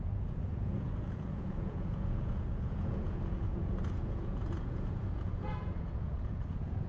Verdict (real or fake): fake